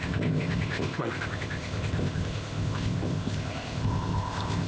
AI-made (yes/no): yes